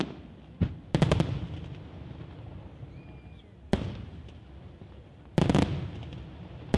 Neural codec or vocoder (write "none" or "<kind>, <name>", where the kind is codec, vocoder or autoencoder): none